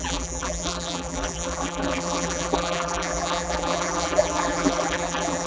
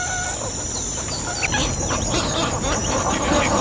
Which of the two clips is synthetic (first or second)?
first